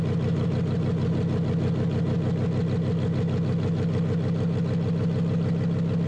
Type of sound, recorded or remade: recorded